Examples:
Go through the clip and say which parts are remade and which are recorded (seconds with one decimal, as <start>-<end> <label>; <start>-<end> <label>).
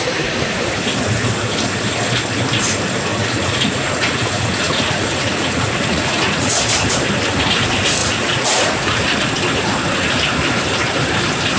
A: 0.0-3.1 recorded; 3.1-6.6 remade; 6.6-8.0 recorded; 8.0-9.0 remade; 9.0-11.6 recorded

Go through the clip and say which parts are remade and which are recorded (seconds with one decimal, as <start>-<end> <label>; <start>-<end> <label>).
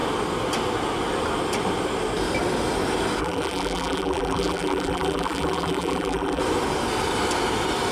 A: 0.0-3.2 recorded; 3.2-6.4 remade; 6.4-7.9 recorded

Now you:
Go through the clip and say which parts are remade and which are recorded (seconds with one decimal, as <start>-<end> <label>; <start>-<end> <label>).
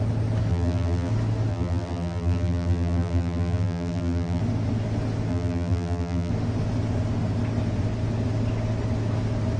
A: 0.0-0.5 recorded; 0.5-1.1 remade; 1.1-1.5 recorded; 1.5-4.4 remade; 4.4-5.3 recorded; 5.3-6.3 remade; 6.3-9.6 recorded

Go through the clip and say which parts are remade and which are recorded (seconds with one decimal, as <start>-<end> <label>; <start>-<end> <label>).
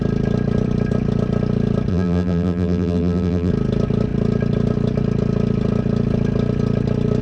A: 0.0-1.9 recorded; 1.9-3.5 remade; 3.5-7.2 recorded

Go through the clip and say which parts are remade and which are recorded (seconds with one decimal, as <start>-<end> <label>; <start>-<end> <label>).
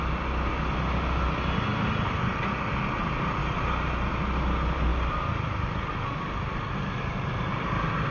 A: 0.0-8.1 recorded